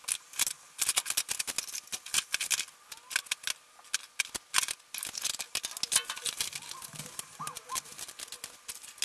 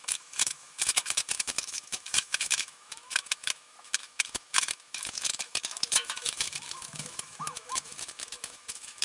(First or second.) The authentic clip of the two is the first